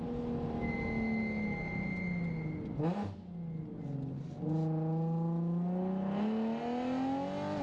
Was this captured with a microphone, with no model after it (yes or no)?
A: yes